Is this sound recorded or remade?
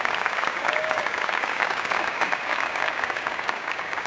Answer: remade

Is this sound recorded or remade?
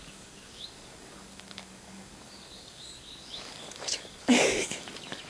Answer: remade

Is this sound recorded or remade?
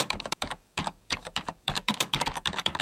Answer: remade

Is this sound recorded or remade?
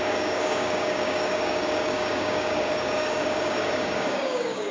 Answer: remade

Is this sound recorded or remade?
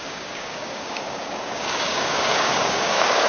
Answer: remade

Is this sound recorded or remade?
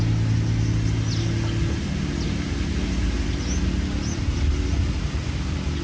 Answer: recorded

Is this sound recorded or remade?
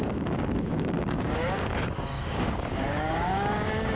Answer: remade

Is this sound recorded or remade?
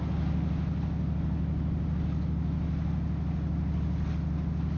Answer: recorded